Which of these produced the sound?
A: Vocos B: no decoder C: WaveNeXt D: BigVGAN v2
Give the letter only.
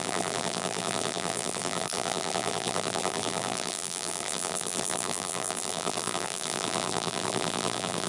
D